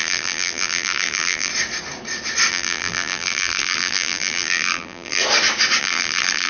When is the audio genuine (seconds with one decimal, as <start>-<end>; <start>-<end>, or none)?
1.5-2.5; 5.2-5.8